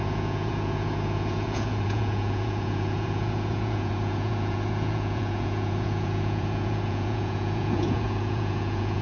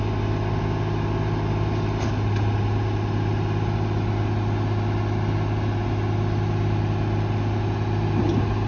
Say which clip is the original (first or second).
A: second